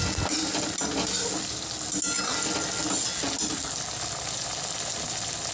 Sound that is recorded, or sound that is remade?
recorded